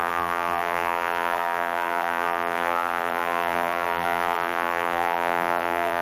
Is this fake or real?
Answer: fake